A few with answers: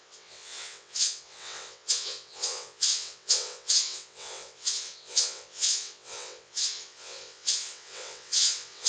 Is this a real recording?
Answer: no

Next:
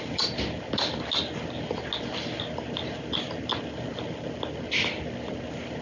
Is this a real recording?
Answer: yes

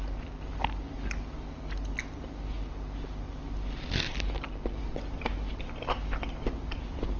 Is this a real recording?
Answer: yes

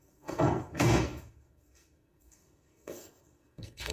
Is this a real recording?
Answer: no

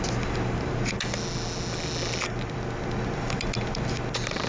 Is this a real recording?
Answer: yes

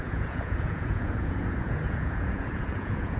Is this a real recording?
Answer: no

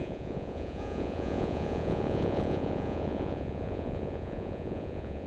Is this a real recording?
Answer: no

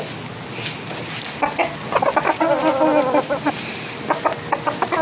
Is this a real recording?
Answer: yes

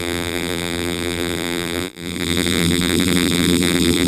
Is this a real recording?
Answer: no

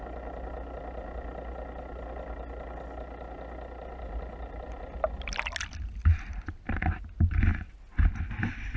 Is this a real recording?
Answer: yes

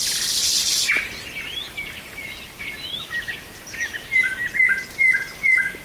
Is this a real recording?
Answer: yes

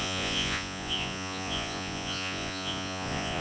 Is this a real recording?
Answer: no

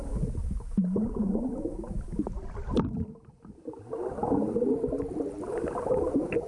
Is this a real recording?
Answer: yes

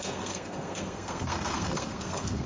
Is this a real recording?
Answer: no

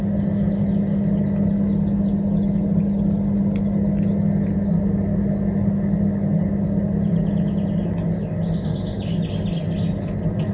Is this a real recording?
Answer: yes